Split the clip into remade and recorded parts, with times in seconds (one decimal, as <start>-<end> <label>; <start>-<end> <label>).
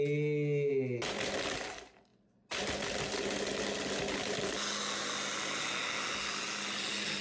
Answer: 0.0-7.2 recorded